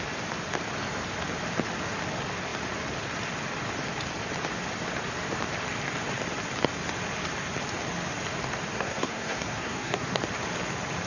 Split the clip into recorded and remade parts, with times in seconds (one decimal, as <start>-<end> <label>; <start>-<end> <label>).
0.0-8.7 recorded; 8.7-10.2 remade; 10.2-11.1 recorded